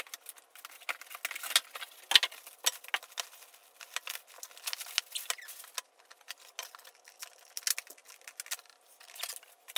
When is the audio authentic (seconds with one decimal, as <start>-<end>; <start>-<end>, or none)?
0.0-9.8